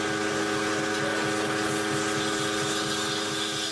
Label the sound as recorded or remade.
recorded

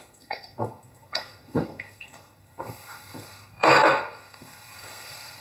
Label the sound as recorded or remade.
remade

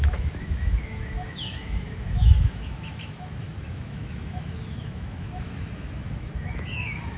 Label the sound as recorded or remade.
remade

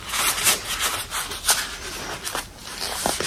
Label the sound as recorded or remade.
recorded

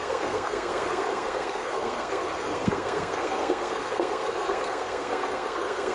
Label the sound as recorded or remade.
remade